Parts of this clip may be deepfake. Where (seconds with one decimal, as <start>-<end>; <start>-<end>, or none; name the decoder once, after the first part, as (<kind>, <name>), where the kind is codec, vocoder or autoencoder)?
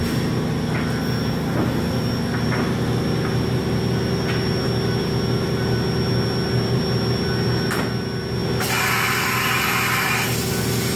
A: none